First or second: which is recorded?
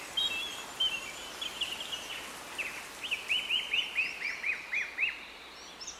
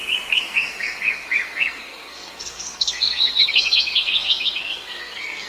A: first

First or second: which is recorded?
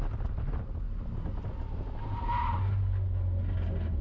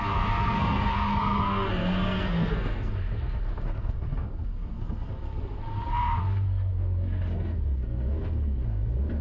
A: first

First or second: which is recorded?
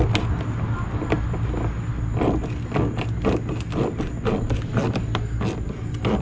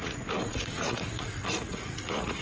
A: first